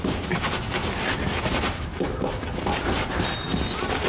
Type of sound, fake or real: real